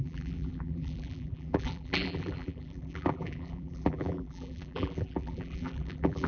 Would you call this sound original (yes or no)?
no